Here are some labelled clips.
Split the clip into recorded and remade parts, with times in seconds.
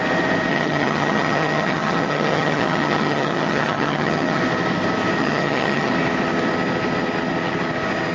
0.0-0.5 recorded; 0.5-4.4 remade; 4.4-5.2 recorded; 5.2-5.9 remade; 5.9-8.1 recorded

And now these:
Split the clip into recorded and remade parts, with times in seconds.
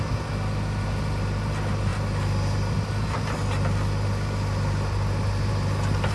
0.0-6.1 recorded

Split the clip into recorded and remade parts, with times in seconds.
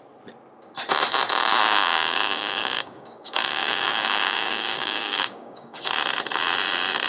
0.0-1.6 recorded; 1.6-5.9 remade; 5.9-7.1 recorded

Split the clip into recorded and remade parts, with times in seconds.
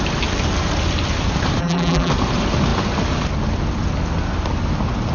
0.0-1.6 recorded; 1.6-2.1 remade; 2.1-5.1 recorded